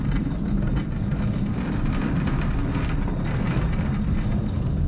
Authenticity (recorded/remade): recorded